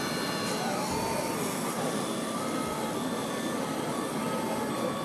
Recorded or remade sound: recorded